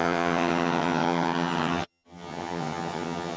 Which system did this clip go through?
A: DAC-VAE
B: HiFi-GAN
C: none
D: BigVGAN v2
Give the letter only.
B